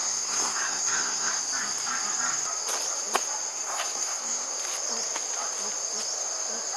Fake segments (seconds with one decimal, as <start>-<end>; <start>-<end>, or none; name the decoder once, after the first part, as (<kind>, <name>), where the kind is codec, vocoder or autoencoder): 0.0-1.4 (codec, SNAC); 3.5-4.5